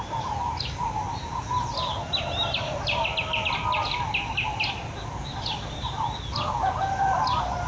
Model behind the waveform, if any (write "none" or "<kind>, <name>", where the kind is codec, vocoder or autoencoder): none